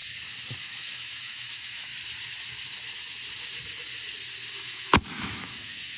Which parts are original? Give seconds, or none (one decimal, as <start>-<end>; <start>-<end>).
0.0-0.6; 1.9-4.5